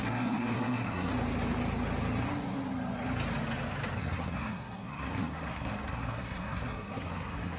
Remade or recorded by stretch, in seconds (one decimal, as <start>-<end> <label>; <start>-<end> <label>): 0.0-1.1 remade; 1.1-4.0 recorded; 4.0-7.6 remade